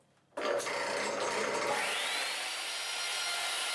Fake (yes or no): no